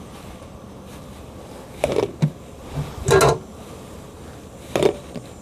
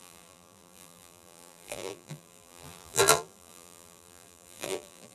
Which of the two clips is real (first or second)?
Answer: first